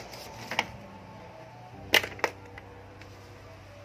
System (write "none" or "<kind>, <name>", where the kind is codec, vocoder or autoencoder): none